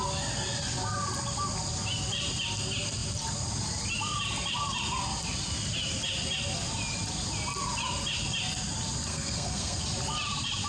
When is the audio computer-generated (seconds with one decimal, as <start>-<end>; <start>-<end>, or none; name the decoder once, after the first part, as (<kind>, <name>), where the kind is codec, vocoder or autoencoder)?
9.1-9.8 (codec, SNAC)